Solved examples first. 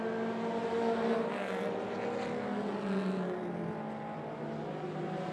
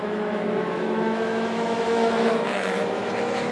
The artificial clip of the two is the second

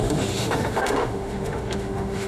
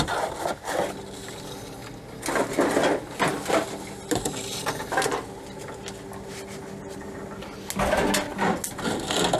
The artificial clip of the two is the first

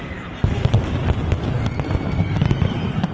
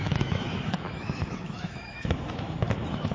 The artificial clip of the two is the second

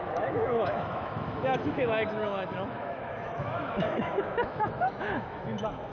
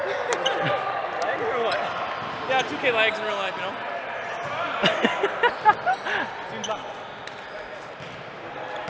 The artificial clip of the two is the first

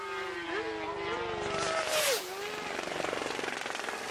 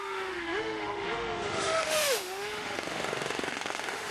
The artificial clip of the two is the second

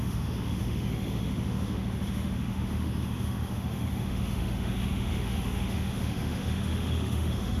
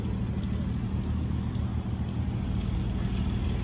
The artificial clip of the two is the first